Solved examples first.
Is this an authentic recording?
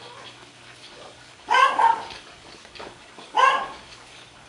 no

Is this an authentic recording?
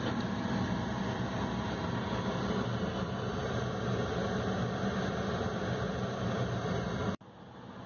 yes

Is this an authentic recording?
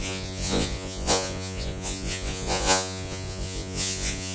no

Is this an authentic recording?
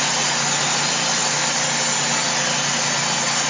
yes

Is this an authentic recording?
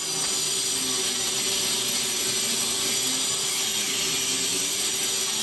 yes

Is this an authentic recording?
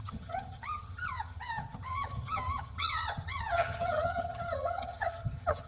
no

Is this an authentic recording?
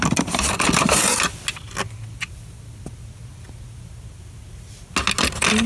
yes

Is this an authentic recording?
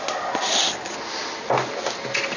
yes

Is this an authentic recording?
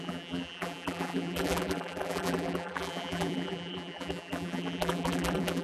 no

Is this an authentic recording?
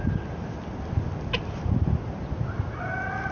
yes